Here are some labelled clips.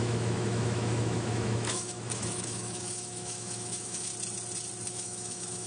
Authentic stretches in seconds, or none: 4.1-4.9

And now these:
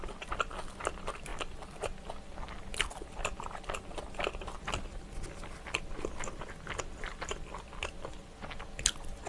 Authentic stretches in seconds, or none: 0.0-9.3

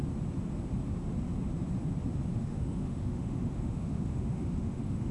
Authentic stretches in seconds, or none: 0.0-2.3

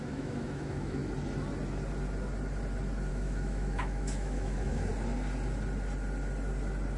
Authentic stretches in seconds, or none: 1.0-3.1; 4.9-7.0

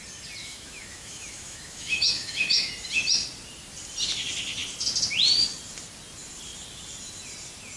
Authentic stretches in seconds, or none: 0.0-0.4; 2.7-7.8